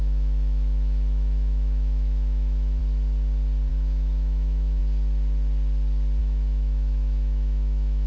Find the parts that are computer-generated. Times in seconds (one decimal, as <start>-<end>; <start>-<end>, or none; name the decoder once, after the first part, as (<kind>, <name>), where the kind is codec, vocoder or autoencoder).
0.0-2.8 (autoencoder, DAC-VAE); 3.7-4.8; 6.2-8.1